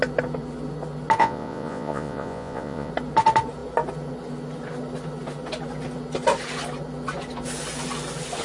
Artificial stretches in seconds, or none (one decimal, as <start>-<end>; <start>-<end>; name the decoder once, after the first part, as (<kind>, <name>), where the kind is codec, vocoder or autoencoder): 1.2-2.9 (vocoder, Vocos)